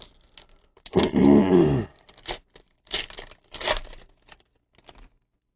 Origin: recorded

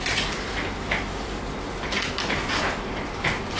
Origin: recorded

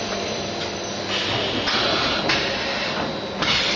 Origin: recorded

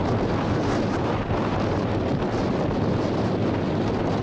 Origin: recorded